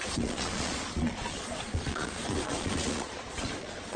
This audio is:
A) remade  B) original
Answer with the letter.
A